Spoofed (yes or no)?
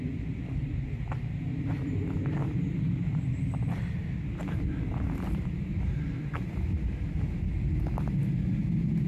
no